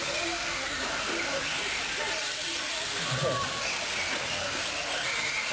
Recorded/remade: recorded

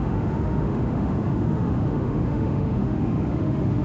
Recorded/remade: remade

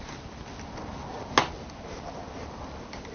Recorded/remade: recorded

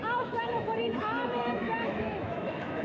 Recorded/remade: remade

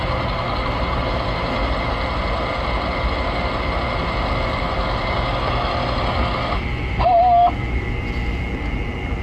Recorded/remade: recorded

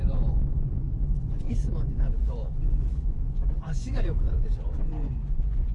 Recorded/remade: remade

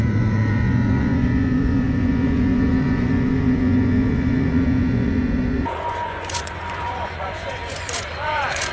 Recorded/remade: remade